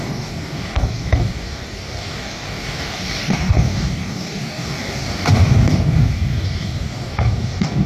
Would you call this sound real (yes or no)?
no